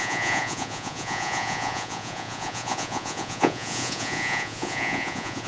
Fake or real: fake